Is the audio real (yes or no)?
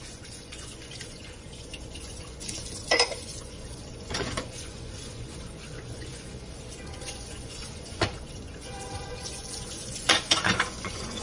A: no